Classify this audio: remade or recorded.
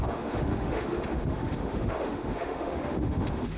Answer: remade